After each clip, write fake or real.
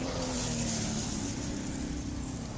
real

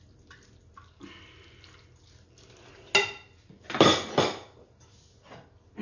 real